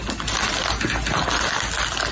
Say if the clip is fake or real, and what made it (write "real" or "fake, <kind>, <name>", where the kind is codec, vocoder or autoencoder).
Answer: real